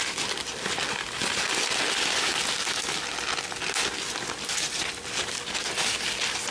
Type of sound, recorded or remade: recorded